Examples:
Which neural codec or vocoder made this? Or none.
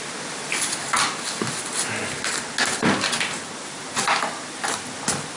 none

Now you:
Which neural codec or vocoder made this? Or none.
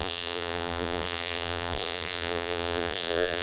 vocoder, BigVGAN v2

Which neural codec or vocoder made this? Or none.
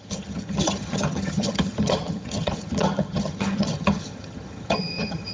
vocoder, HiFi-GAN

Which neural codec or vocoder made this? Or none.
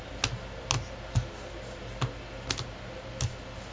none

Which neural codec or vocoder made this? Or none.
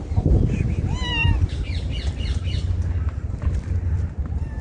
none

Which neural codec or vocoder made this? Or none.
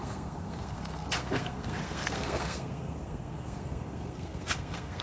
codec, SNAC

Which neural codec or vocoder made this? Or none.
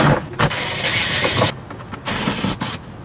none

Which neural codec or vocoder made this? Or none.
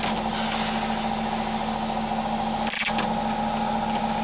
none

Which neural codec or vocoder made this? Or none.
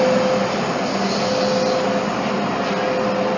none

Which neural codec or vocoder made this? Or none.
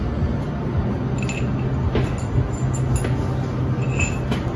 none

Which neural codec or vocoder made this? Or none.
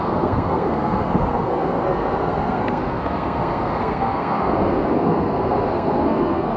codec, SNAC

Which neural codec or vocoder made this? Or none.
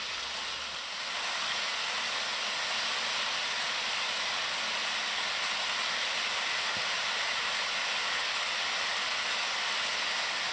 none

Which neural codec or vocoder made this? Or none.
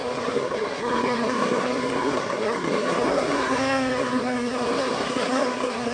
codec, SNAC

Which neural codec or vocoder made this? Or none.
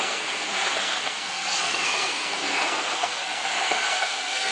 codec, SNAC